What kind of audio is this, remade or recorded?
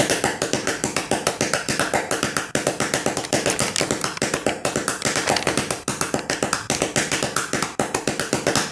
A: recorded